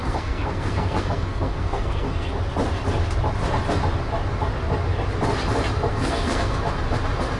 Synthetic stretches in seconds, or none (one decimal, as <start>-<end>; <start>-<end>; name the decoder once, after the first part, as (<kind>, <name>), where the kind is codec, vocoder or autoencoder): 0.0-2.3 (codec, SNAC); 5.9-6.6